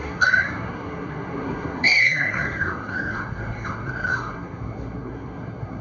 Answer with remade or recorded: remade